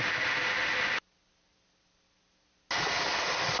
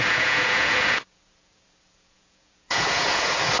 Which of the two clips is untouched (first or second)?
first